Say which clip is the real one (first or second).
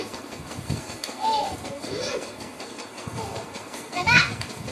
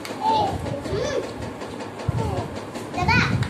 second